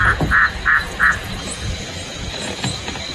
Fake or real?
fake